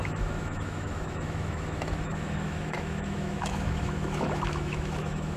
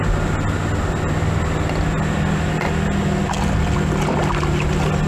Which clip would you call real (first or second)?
second